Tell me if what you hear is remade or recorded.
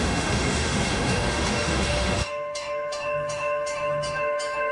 remade